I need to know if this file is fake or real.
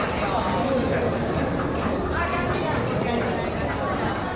real